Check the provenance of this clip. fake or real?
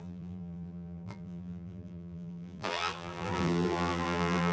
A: fake